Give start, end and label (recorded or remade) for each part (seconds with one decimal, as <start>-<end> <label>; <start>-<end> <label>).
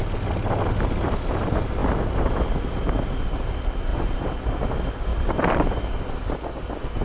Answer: 0.0-3.9 recorded; 3.9-4.4 remade; 4.4-5.1 recorded; 5.1-5.7 remade; 5.7-7.0 recorded